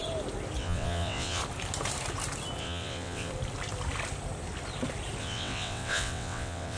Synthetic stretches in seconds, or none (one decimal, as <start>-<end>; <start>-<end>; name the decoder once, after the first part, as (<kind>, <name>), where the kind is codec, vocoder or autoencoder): 0.6-1.4 (vocoder, WaveNeXt); 2.6-3.3; 5.2-6.8